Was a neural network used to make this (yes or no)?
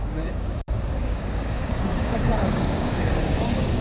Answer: yes